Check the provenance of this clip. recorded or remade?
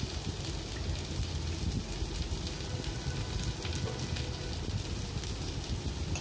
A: recorded